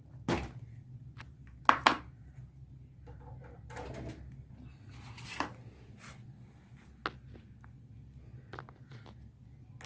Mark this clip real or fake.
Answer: real